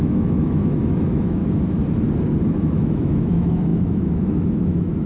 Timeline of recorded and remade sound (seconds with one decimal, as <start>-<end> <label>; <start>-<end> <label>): 0.0-1.4 remade; 1.4-2.5 recorded; 2.5-5.1 remade